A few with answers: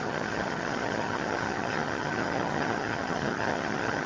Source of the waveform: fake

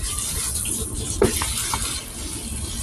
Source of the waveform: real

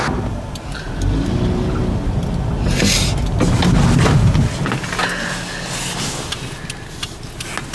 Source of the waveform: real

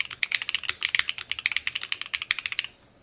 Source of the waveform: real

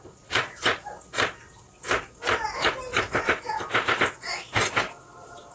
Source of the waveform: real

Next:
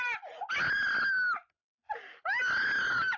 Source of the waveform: real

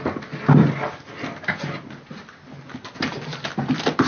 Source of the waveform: real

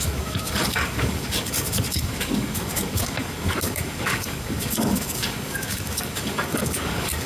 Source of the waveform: fake